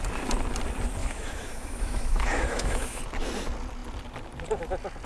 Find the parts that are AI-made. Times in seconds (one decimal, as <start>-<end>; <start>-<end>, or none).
1.0-3.0